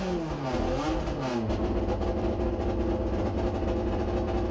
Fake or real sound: real